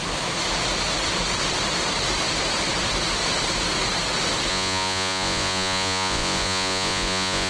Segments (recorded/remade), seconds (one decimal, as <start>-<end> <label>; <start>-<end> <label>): 0.0-4.5 recorded; 4.5-7.5 remade

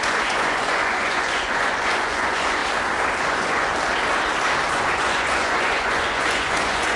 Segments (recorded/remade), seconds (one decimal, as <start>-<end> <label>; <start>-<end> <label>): 0.0-2.6 remade; 2.6-3.2 recorded; 3.2-3.7 remade; 3.7-4.7 recorded; 4.7-7.0 remade

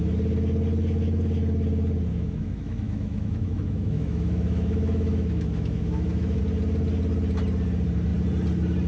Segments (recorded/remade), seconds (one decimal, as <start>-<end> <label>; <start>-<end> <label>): 0.0-2.1 recorded; 2.1-6.4 remade; 6.4-8.9 recorded

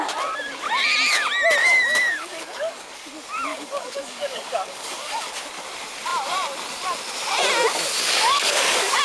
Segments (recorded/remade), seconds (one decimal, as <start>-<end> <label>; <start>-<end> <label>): 0.0-1.6 recorded; 1.6-2.9 remade; 2.9-3.5 recorded; 3.5-5.3 remade; 5.3-8.0 recorded; 8.0-9.0 remade

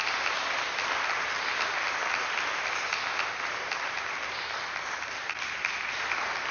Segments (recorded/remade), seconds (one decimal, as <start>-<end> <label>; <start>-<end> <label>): 0.0-6.5 recorded

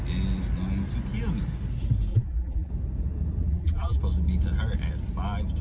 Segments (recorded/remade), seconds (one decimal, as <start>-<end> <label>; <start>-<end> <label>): 0.0-2.1 recorded; 2.1-2.7 remade; 2.7-3.5 recorded; 3.5-4.0 remade; 4.0-5.6 recorded